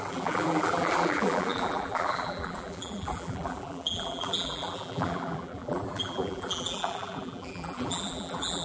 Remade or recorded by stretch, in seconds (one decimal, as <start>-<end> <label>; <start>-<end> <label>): 0.0-8.6 remade